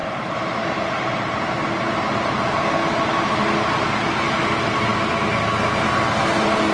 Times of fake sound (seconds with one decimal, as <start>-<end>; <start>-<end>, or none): none